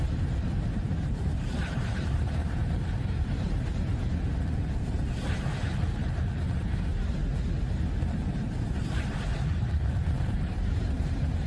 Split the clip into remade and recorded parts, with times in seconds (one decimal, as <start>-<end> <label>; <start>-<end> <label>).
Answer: 0.0-3.9 remade; 3.9-6.6 recorded; 6.6-7.2 remade; 7.2-8.3 recorded; 8.3-11.5 remade